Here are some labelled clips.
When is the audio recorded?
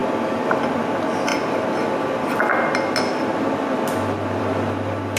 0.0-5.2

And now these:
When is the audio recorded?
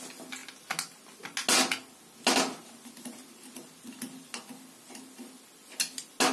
0.0-6.3